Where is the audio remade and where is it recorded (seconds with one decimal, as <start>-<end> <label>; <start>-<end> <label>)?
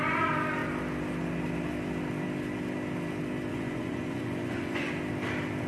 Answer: 0.0-3.5 recorded; 3.5-4.9 remade; 4.9-5.7 recorded